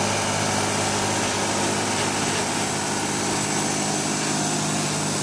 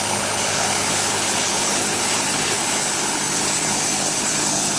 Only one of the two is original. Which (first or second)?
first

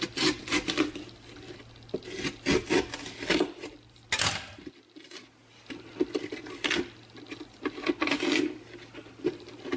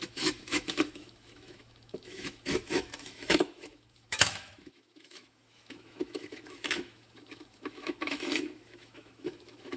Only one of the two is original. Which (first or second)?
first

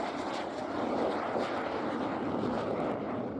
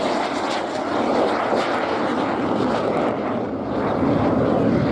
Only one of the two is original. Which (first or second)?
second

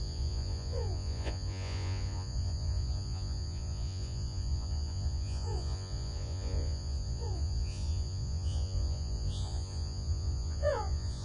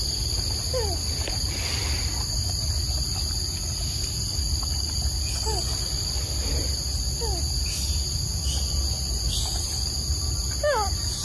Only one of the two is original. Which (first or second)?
second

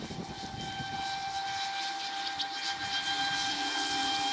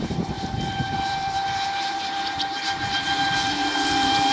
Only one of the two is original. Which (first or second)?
first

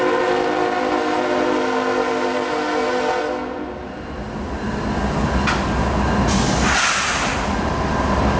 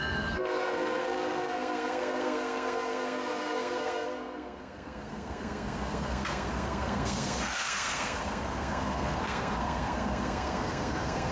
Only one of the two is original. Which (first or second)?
first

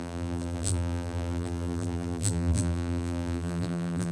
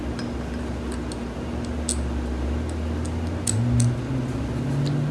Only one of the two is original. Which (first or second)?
second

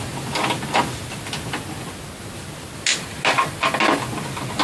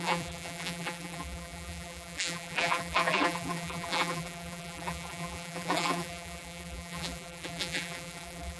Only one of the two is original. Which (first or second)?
first